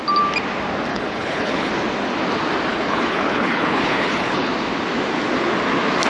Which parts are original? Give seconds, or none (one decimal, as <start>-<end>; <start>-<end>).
0.0-0.9; 1.7-2.7; 4.5-6.1